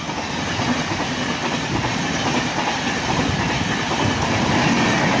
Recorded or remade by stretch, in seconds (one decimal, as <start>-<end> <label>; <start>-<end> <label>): 0.0-5.2 recorded